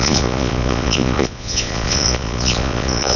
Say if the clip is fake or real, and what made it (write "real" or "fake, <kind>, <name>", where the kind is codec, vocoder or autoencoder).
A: fake, vocoder, Vocos